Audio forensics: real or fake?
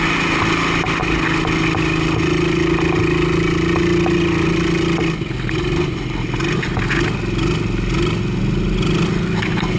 real